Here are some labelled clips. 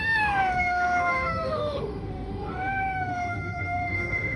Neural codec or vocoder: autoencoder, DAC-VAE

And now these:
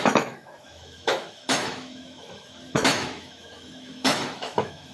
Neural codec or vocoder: autoencoder, DAC-VAE